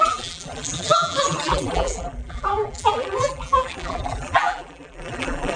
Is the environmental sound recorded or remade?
remade